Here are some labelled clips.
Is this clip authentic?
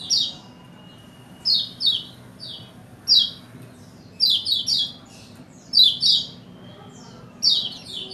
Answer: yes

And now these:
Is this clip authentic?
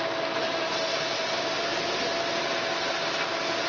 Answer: yes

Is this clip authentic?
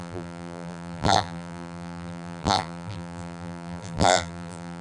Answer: no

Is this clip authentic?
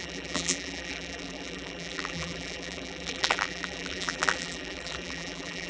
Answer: no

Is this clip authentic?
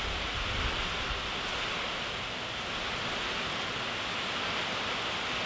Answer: yes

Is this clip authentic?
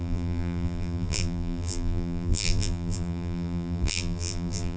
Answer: no